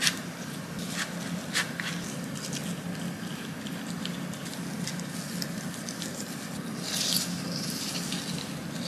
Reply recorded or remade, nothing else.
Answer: recorded